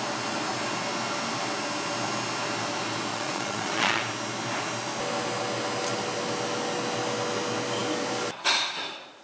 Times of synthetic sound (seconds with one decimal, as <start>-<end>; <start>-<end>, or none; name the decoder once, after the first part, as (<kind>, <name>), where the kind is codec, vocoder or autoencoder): 3.1-4.0 (vocoder, Vocos)